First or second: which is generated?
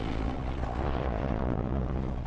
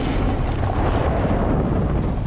first